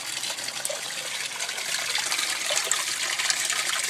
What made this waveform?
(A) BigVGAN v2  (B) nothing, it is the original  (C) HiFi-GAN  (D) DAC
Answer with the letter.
B